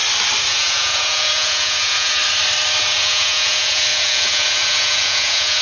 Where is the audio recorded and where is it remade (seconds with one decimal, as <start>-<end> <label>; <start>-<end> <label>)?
0.0-0.5 recorded; 0.5-2.2 remade; 2.2-2.8 recorded; 2.8-5.6 remade